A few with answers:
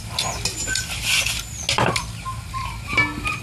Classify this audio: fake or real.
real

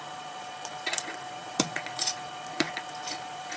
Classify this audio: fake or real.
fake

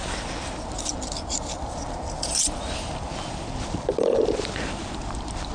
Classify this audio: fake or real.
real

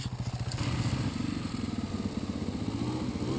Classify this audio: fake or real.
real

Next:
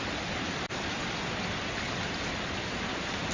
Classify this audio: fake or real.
real